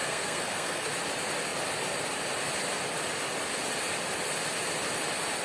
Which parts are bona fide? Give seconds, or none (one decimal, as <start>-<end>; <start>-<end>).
0.9-5.4

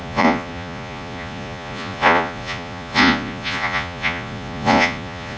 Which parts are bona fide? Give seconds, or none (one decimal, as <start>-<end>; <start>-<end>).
none